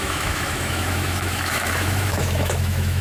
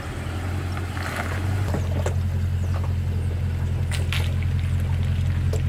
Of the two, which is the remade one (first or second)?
first